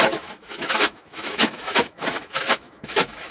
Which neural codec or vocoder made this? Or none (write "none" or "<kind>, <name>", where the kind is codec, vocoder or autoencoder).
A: autoencoder, DAC-VAE